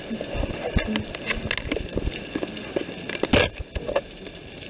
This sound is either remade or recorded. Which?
recorded